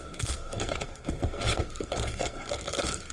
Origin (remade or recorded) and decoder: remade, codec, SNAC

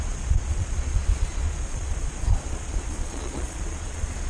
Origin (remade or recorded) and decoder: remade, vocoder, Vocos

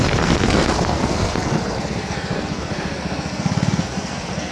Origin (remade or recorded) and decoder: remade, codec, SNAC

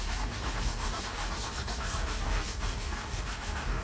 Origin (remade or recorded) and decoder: remade, codec, DAC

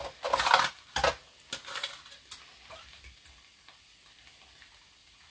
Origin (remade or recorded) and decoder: recorded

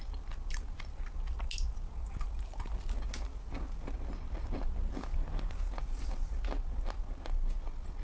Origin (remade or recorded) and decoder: recorded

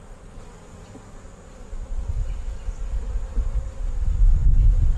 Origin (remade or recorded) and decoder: recorded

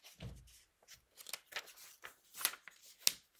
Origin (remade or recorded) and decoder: recorded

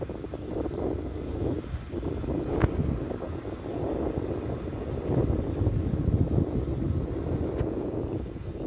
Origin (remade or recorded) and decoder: recorded